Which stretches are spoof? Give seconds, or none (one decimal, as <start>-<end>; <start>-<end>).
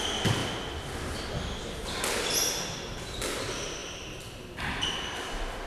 none